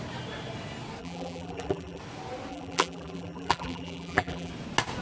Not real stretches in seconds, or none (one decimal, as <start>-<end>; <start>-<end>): 1.0-2.0; 2.5-4.5